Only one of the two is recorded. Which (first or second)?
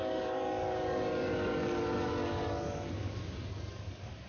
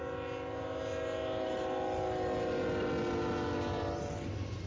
second